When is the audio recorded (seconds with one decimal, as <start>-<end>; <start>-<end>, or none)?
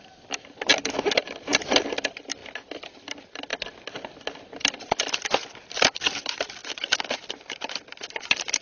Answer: 0.7-1.6; 2.4-3.1; 3.5-5.7; 6.6-7.9